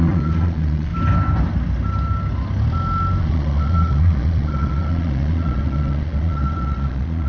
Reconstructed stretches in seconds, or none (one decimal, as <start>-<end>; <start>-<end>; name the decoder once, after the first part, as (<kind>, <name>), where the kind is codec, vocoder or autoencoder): 0.0-0.9 (vocoder, Vocos); 3.2-7.3